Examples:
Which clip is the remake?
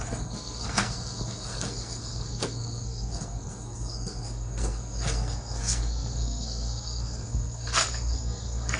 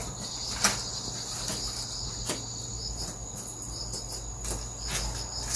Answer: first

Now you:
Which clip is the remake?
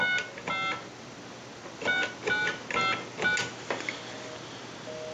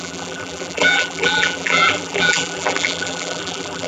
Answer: second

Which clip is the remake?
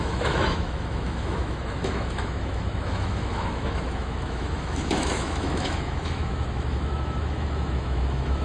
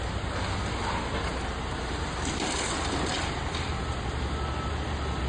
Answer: first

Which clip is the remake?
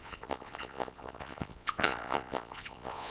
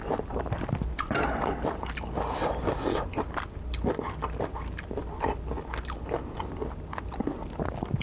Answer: first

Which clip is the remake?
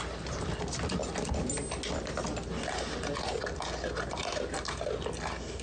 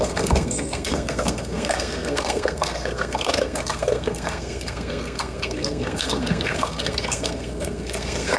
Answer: second